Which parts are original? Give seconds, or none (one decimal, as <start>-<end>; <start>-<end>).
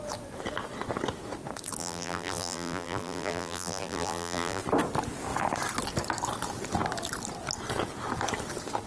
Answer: 0.0-1.8; 4.6-8.9